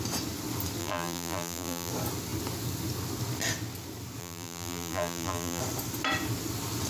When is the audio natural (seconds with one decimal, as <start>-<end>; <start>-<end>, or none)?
0.0-0.8; 1.9-4.2; 5.6-6.9